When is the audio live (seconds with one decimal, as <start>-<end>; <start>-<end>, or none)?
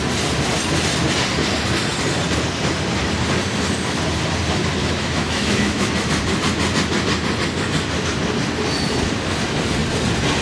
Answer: 0.0-4.8; 5.9-10.4